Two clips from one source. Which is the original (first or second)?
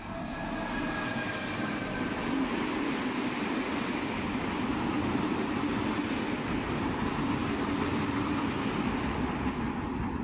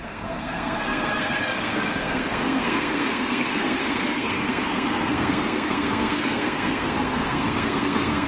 first